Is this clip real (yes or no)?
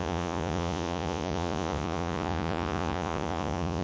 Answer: no